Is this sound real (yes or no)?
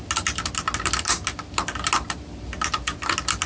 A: yes